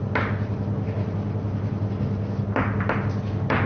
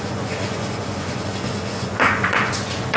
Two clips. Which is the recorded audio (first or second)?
first